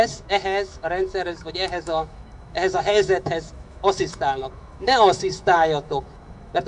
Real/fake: fake